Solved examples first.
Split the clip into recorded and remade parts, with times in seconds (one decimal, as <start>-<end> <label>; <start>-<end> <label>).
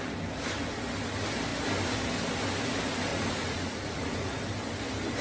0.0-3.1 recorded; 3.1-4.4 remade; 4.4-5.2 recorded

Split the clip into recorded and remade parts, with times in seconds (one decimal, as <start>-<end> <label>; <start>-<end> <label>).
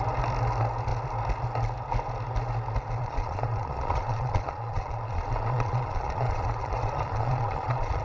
0.0-3.0 recorded; 3.0-8.0 remade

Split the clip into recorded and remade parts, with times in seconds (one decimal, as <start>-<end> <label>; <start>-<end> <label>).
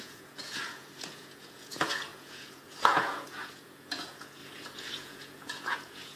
0.0-6.2 remade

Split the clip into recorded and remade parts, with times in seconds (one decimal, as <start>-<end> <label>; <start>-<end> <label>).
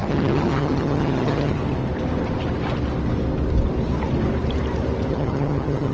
0.0-1.6 remade; 1.6-5.1 recorded; 5.1-5.9 remade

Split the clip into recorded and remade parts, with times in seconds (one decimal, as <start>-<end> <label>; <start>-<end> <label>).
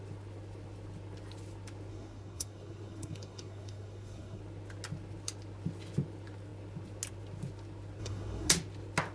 0.0-1.9 recorded; 1.9-4.4 remade; 4.4-8.0 recorded; 8.0-8.5 remade; 8.5-9.1 recorded